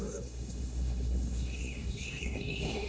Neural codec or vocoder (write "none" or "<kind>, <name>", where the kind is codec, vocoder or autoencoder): codec, SNAC